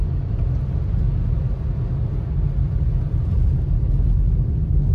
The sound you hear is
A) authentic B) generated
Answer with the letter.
A